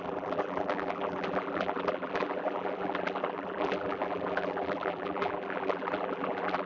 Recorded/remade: remade